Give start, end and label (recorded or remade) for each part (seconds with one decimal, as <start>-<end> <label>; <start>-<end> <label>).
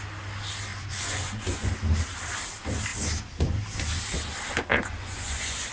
0.0-0.7 recorded; 0.7-1.7 remade; 1.7-4.7 recorded; 4.7-5.7 remade